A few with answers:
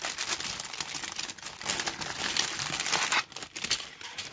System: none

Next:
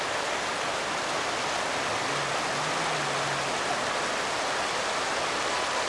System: none